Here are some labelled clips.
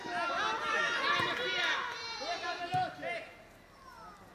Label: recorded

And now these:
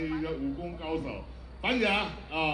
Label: recorded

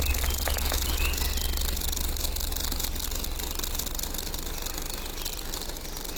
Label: recorded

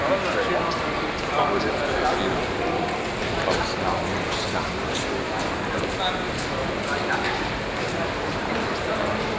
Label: recorded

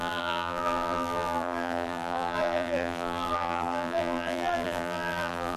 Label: remade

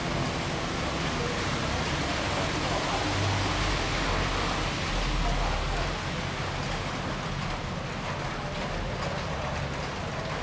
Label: recorded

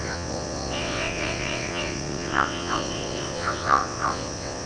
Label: remade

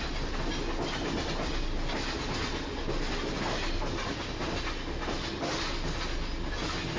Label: recorded